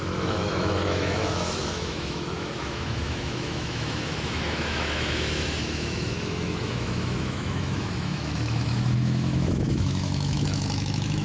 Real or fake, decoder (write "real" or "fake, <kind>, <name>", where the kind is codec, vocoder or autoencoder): fake, autoencoder, DAC-VAE